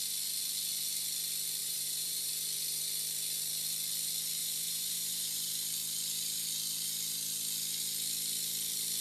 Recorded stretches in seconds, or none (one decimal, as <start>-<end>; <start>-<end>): 0.0-1.6; 2.3-4.4; 5.5-9.0